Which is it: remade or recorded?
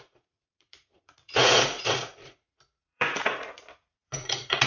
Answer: remade